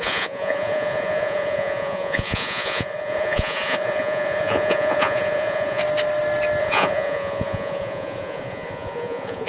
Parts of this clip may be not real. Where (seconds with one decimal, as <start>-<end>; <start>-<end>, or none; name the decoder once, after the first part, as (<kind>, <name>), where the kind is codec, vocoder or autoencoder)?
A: 0.0-5.8 (vocoder, Vocos); 6.6-9.5